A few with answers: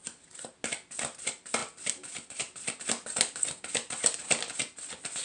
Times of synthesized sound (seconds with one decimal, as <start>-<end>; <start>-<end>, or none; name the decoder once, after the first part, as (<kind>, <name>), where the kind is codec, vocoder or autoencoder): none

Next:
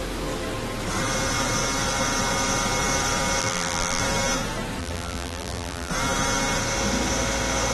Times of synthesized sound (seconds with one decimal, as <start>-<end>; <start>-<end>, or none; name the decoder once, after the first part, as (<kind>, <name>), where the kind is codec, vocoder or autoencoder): 3.4-4.0 (vocoder, BigVGAN v2); 4.8-5.9

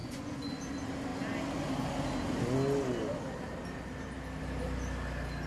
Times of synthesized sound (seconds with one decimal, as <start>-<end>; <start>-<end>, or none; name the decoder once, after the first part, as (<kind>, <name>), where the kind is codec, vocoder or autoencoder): 0.0-0.6 (vocoder, Vocos)

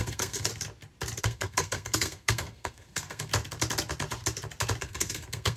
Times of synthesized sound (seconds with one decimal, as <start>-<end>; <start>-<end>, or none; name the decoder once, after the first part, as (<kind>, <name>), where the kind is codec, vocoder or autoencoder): 0.0-0.5 (codec, SNAC); 1.2-3.3; 4.8-5.6

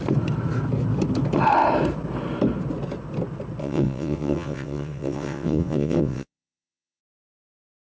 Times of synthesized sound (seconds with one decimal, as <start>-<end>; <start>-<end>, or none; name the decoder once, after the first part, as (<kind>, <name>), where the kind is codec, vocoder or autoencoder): 3.6-7.0 (vocoder, WaveNeXt)

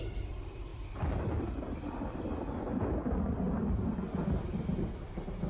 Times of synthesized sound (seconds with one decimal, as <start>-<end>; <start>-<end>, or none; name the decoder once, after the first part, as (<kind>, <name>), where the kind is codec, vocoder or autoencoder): none